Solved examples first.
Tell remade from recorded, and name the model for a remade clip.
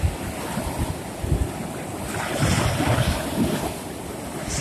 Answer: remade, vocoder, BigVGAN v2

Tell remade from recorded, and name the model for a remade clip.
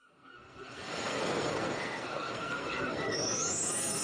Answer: remade, codec, SNAC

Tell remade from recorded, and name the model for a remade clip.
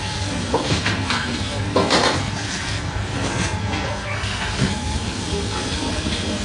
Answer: remade, codec, SNAC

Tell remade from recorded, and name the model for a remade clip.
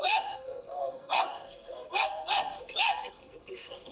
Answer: remade, codec, SNAC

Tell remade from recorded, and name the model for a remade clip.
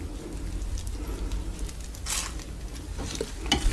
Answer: recorded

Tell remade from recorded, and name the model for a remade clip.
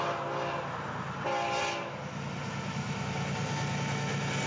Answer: recorded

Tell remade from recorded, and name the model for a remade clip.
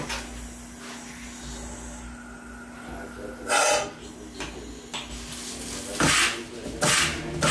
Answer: recorded